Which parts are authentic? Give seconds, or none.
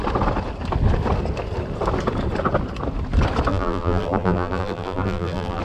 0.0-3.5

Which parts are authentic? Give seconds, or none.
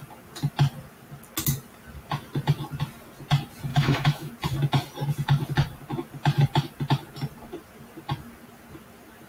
0.0-3.7; 4.3-9.3